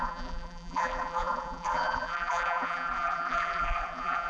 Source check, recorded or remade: remade